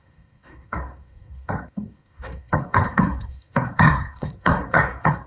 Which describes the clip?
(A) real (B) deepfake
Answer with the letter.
B